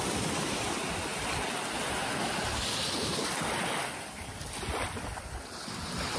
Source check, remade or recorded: recorded